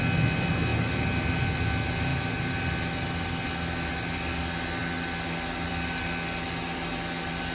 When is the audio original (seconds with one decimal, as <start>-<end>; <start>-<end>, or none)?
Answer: 0.0-7.5